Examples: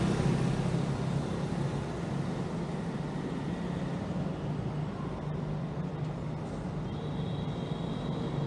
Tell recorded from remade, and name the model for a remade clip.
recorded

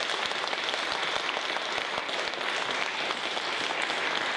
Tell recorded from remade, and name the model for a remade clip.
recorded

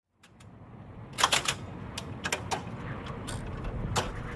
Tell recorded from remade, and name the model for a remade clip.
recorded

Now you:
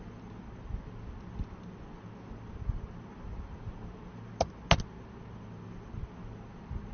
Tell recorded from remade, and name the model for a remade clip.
recorded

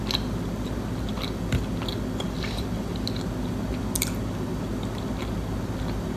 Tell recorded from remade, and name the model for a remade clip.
recorded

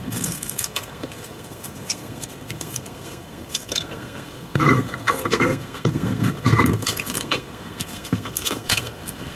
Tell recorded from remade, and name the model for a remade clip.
remade, codec, SNAC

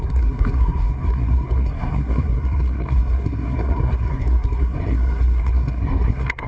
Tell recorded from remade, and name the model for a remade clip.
remade, codec, SNAC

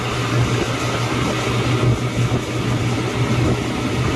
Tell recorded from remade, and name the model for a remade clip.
recorded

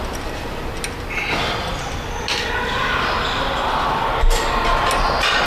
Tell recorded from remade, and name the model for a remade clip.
recorded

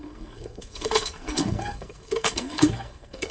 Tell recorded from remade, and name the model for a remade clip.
remade, codec, SNAC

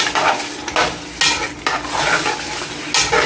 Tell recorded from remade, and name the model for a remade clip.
recorded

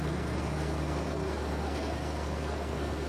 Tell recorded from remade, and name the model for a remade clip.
remade, codec, SNAC